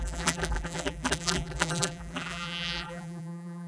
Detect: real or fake fake